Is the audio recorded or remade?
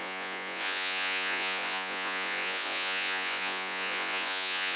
remade